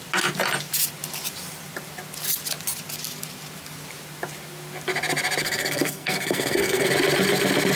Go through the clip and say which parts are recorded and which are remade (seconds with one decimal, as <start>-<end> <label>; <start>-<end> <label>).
0.0-5.4 recorded; 5.4-6.9 remade; 6.9-7.8 recorded